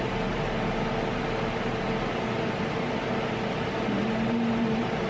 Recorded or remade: recorded